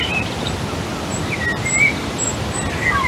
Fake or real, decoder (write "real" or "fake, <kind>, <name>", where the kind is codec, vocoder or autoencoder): real